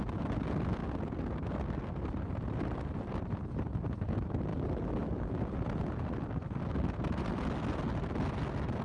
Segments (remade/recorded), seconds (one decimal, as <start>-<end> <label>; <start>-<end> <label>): 0.0-8.8 recorded